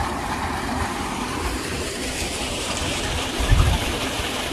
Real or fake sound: fake